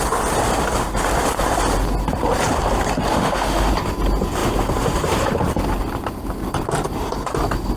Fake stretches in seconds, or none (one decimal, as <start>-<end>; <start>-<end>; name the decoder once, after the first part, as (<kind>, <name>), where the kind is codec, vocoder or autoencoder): 3.1-3.7 (autoencoder, DAC-VAE)